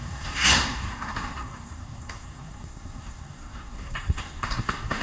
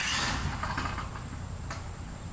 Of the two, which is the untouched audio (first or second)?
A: second